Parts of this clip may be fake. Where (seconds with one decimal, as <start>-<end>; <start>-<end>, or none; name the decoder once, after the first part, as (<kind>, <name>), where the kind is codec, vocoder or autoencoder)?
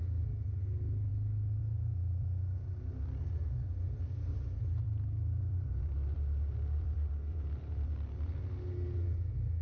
1.1-1.6 (vocoder, BigVGAN v2); 4.3-7.1